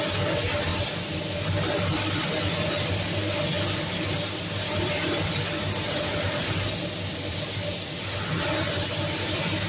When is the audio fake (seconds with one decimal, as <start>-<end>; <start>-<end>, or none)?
none